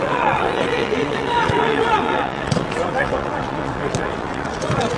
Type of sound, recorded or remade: remade